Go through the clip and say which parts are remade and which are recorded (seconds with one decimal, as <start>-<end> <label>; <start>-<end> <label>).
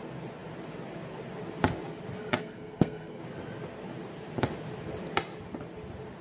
0.0-2.4 recorded; 2.4-3.2 remade; 3.2-6.2 recorded